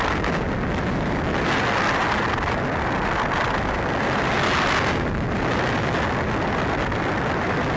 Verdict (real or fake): real